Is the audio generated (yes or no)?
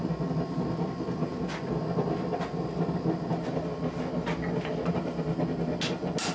no